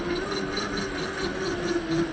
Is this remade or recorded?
recorded